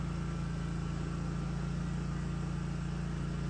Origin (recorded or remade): recorded